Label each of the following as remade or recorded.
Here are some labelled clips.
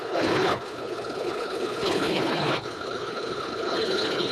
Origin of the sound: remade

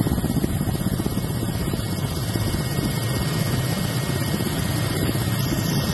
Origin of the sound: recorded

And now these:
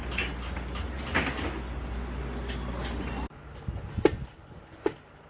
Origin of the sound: recorded